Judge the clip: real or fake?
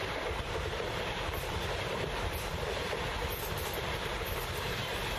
fake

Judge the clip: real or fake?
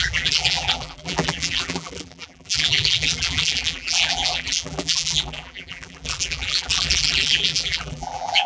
fake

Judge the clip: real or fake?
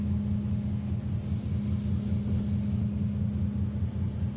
real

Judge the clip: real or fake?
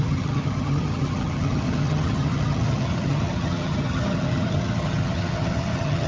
fake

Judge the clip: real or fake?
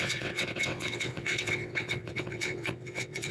fake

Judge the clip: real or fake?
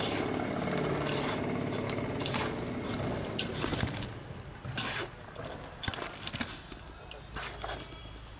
real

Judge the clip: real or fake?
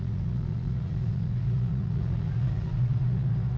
fake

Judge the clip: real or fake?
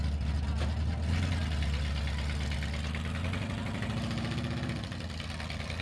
real